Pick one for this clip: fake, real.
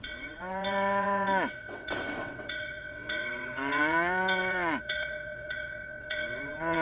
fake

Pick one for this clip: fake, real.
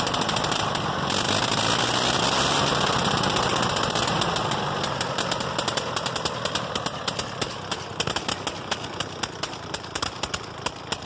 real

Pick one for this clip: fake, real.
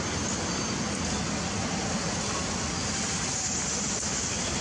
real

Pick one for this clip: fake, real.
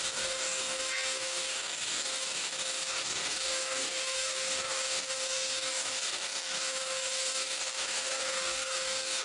fake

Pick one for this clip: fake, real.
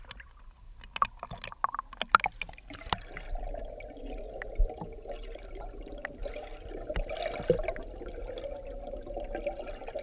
real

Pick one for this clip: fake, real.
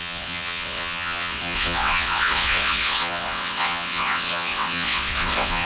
fake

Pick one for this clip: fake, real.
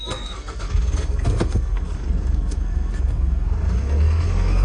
fake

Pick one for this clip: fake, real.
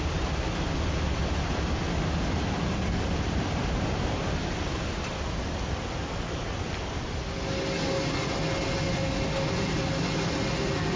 real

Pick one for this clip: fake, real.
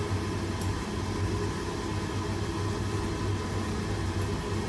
real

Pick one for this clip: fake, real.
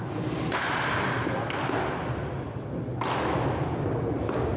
real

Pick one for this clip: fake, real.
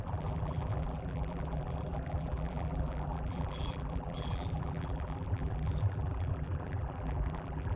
fake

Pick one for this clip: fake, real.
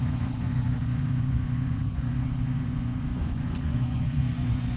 fake